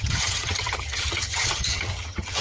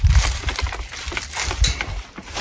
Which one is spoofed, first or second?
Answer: first